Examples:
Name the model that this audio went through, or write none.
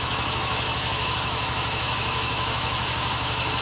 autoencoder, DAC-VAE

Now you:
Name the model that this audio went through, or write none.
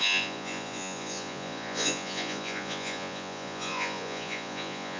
vocoder, Vocos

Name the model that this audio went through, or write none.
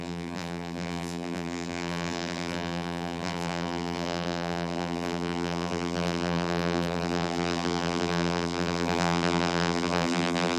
vocoder, BigVGAN v2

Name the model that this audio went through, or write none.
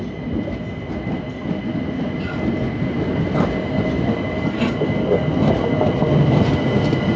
none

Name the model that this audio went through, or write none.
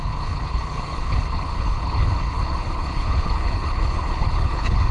codec, HILCodec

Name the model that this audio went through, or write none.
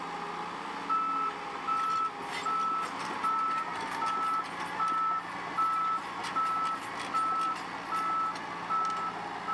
none